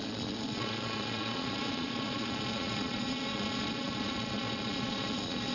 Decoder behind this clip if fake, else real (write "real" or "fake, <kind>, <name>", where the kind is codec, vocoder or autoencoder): fake, vocoder, Vocos